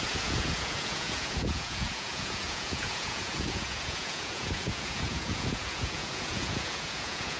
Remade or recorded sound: remade